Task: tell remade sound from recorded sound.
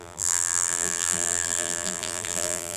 remade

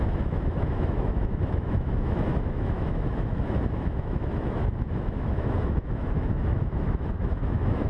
remade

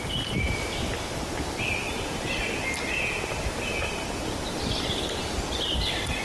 recorded